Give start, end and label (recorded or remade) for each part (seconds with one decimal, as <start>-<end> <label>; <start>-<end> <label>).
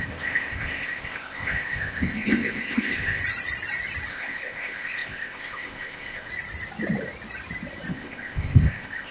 0.0-3.2 remade; 3.2-4.1 recorded; 4.1-6.3 remade; 6.3-7.9 recorded; 7.9-9.1 remade